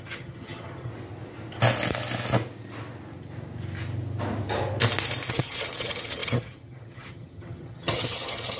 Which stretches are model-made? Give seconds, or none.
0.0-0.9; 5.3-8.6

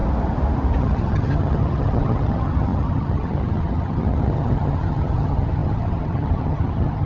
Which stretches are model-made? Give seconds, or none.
0.8-7.1

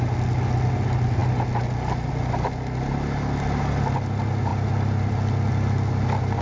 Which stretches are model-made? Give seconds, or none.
none

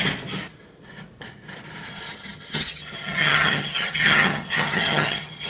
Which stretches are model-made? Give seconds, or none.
1.9-5.5

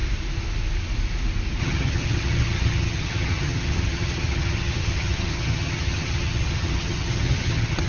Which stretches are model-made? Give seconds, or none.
1.6-7.9

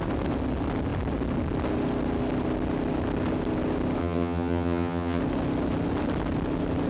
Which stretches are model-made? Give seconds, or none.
4.0-5.2

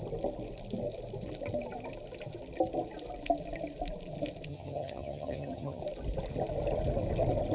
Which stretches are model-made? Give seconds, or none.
4.5-5.8